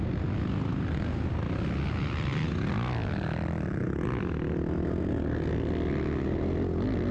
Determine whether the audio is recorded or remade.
recorded